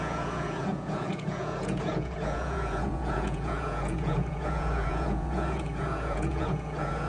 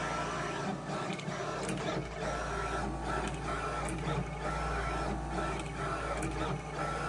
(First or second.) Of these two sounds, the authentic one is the second